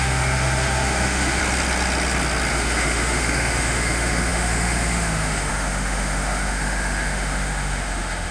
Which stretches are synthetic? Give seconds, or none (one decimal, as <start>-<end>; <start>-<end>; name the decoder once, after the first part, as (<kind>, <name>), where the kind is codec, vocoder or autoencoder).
0.0-1.4 (autoencoder, DAC-VAE); 2.5-8.3